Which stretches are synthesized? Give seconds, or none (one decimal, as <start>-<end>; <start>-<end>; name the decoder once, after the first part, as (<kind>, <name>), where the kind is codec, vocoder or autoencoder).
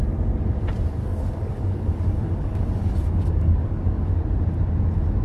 1.0-4.1 (codec, DAC)